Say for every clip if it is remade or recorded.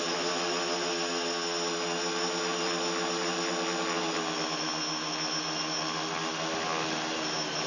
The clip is recorded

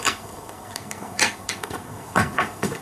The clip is remade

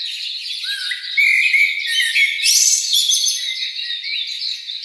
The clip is recorded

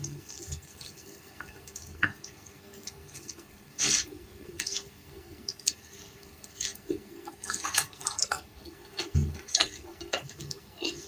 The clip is remade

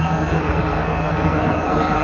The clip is remade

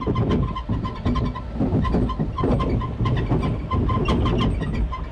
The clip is recorded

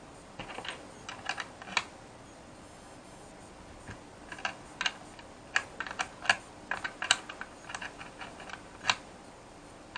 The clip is recorded